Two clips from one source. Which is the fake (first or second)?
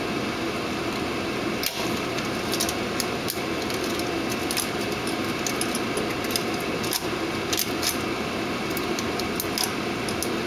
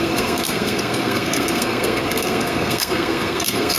second